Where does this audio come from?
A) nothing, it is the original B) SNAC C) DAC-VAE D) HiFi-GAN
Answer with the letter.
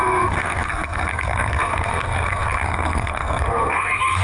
B